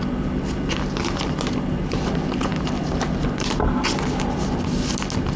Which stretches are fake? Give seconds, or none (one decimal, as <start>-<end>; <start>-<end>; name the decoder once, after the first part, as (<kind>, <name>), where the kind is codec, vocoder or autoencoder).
none